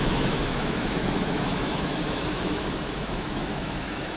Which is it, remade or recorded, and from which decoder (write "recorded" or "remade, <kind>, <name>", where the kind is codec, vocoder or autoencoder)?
remade, autoencoder, DAC-VAE